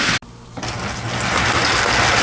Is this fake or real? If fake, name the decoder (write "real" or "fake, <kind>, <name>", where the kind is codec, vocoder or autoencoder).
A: real